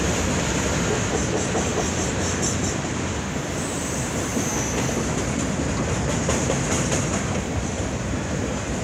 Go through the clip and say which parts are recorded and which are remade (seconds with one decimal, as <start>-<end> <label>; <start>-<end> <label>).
0.0-1.7 remade; 1.7-3.7 recorded; 3.7-4.3 remade; 4.3-5.9 recorded; 5.9-8.8 remade